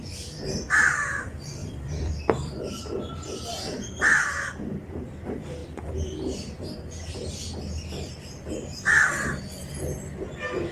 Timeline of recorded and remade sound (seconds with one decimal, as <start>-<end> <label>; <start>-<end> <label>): 0.0-5.6 remade; 5.6-9.1 recorded; 9.1-10.7 remade